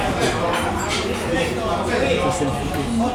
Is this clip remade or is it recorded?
recorded